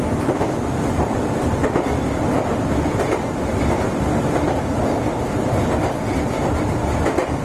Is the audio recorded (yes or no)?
no